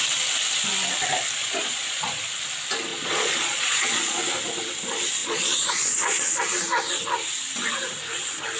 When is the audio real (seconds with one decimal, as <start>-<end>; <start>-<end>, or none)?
0.0-1.4; 2.2-2.9; 4.2-5.2; 6.4-8.6